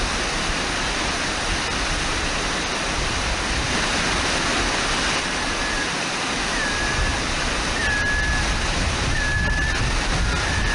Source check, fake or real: real